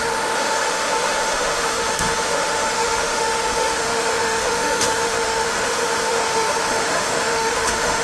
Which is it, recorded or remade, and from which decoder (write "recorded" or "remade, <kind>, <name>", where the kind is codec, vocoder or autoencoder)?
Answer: remade, autoencoder, DAC-VAE